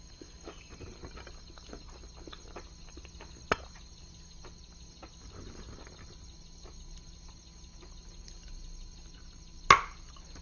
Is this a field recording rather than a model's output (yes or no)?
yes